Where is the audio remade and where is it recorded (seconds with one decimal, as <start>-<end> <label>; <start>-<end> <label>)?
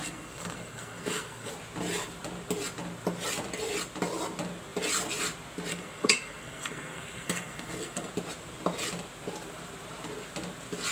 0.0-1.5 remade; 1.5-5.7 recorded; 5.7-8.1 remade; 8.1-10.9 recorded